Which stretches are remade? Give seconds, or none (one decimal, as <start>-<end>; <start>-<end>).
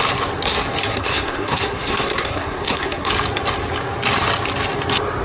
0.9-3.1